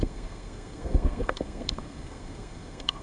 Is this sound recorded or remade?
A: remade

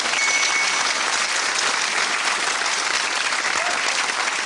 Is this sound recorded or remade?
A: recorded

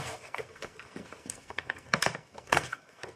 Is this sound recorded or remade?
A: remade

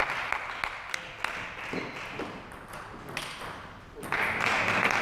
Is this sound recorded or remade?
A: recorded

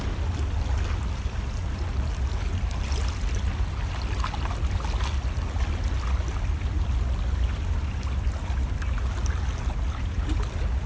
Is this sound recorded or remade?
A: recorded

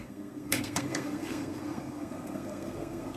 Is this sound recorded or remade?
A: remade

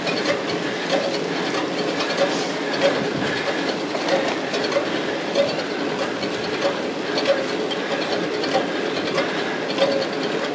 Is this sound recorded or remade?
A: recorded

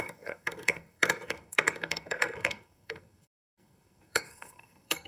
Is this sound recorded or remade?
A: remade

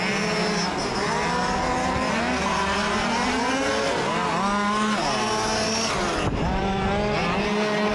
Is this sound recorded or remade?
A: recorded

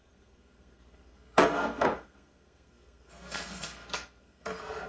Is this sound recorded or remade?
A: remade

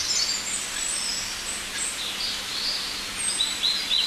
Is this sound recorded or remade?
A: recorded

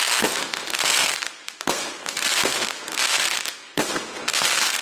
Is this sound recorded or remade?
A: remade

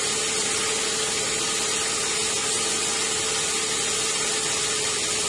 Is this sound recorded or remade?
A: recorded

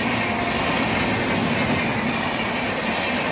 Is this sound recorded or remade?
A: recorded